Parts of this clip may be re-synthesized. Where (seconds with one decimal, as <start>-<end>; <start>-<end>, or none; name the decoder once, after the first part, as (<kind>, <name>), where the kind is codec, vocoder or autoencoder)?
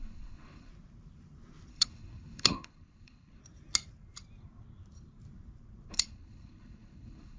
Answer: 0.0-0.7 (codec, HILCodec); 1.7-3.4; 5.9-7.4